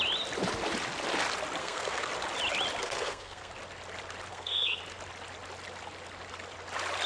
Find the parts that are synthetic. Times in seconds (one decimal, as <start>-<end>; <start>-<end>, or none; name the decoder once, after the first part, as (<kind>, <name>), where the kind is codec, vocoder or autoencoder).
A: 1.6-2.1 (codec, SNAC); 2.8-3.5; 4.3-4.8